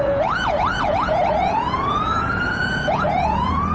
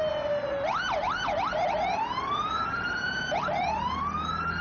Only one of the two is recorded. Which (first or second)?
second